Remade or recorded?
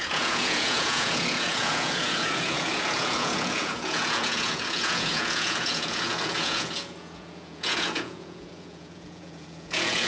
remade